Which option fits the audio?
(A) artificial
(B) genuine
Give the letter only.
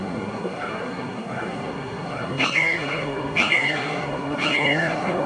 A